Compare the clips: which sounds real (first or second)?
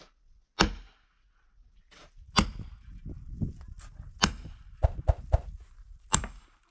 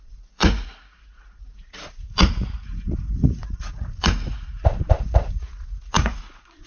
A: first